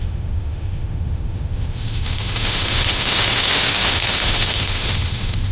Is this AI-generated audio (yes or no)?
yes